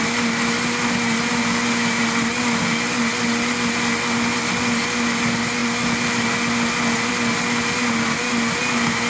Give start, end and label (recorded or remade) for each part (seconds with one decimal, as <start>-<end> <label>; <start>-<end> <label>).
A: 0.0-9.1 recorded